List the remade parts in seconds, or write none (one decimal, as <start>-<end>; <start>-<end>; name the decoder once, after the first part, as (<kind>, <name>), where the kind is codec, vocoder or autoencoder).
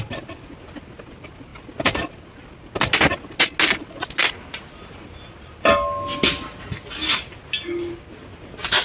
none